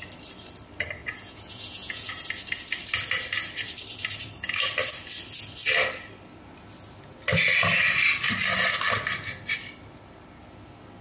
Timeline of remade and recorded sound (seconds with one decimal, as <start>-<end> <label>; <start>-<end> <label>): 0.0-1.0 recorded; 1.0-2.1 remade; 2.1-11.0 recorded